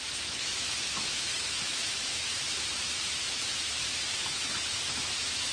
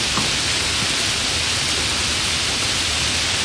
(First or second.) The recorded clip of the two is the second